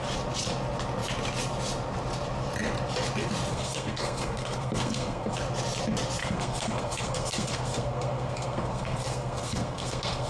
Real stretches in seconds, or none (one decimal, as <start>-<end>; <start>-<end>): 0.0-3.5; 5.4-6.2

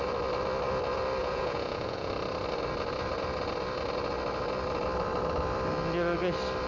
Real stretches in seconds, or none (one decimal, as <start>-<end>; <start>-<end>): 0.0-1.2; 2.1-6.7